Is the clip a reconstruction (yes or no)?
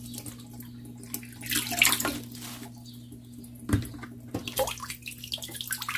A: no